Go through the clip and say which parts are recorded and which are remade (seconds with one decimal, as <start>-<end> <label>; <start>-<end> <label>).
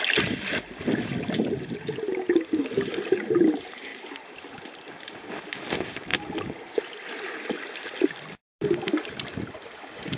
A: 0.0-10.2 recorded